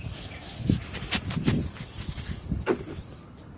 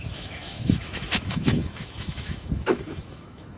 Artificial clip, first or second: second